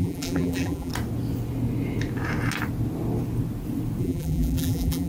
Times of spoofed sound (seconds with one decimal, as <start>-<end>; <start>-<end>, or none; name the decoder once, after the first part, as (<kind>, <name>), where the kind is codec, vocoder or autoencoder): 0.0-0.9 (vocoder, BigVGAN v2); 4.0-5.1